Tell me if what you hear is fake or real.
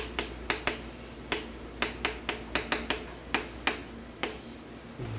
real